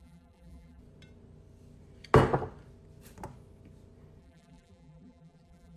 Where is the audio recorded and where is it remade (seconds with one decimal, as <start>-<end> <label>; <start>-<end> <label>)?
0.0-0.8 remade; 0.8-4.2 recorded; 4.2-5.8 remade